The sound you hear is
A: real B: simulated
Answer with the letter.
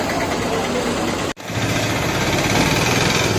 A